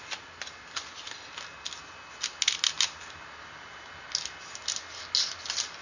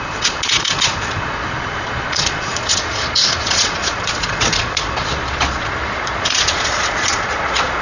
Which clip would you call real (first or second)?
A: first